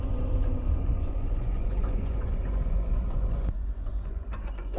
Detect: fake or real fake